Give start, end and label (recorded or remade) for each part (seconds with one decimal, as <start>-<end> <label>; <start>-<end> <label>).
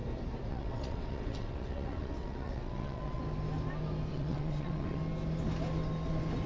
0.0-0.5 recorded; 0.5-3.2 remade; 3.2-4.1 recorded; 4.1-5.0 remade; 5.0-6.5 recorded